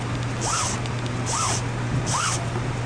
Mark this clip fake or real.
real